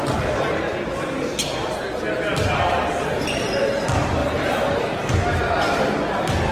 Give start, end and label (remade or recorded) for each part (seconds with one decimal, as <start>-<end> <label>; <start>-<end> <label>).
0.0-2.3 recorded; 2.3-3.3 remade; 3.3-4.2 recorded; 4.2-5.8 remade; 5.8-6.5 recorded